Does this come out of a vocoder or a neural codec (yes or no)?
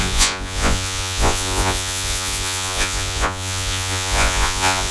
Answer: yes